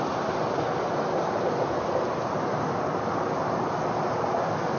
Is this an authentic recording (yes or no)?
yes